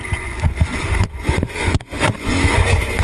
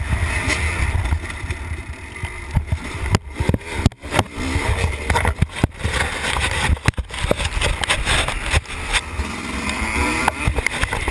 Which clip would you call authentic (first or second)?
second